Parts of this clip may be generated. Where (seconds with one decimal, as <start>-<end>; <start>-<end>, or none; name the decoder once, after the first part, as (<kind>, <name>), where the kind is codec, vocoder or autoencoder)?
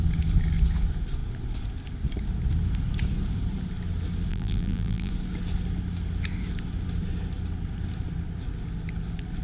4.3-5.1 (vocoder, BigVGAN v2)